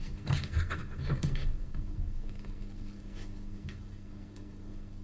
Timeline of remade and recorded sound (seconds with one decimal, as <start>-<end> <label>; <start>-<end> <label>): 0.0-5.0 remade